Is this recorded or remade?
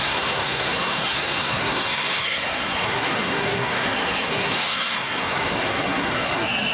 remade